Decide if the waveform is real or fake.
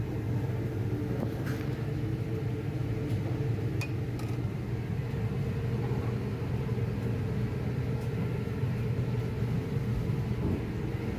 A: real